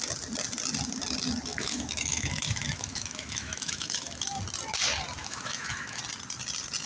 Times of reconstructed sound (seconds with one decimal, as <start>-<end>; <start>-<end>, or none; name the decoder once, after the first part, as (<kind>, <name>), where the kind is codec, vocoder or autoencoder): 1.5-4.4 (autoencoder, DAC-VAE); 5.2-6.0

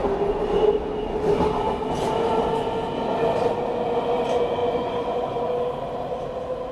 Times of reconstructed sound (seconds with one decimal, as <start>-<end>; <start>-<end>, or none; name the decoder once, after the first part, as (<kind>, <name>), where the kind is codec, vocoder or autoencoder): 4.6-5.4 (vocoder, Vocos)